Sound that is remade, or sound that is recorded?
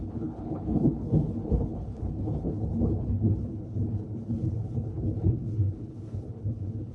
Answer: remade